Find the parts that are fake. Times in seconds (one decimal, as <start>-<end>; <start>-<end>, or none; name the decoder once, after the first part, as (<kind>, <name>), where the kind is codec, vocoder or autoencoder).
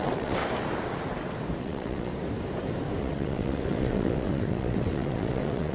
0.0-0.4 (vocoder, WaveNeXt); 1.6-2.1; 3.0-5.7